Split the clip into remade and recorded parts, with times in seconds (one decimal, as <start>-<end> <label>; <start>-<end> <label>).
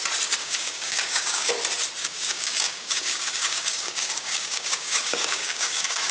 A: 0.0-0.4 recorded; 0.4-1.5 remade; 1.5-2.0 recorded; 2.0-6.1 remade